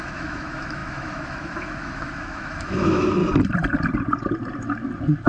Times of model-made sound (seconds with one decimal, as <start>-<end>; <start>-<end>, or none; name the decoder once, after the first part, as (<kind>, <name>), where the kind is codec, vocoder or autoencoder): 0.0-3.2 (autoencoder, DAC-VAE)